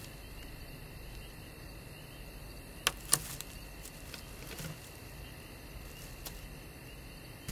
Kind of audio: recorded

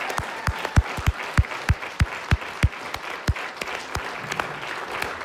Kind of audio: recorded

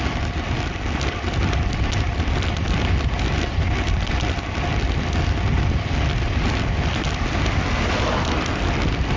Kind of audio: recorded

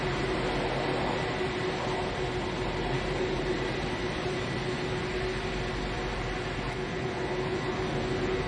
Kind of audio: recorded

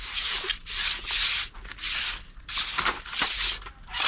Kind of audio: recorded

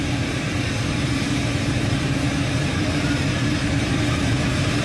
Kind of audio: remade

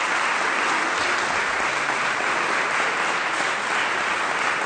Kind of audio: recorded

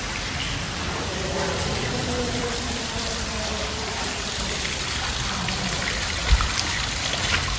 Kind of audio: remade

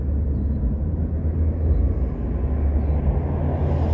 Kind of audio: recorded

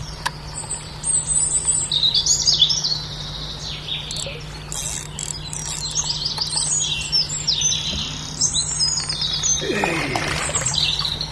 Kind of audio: recorded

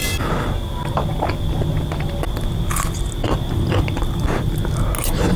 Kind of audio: recorded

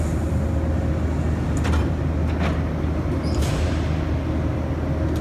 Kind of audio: recorded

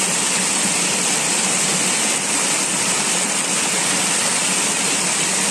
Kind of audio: recorded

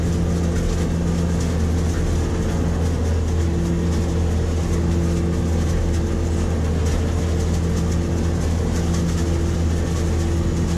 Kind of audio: recorded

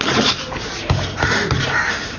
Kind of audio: remade